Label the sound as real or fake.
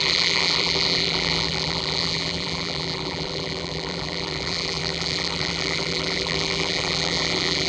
fake